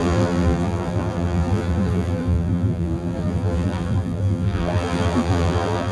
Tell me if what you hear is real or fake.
fake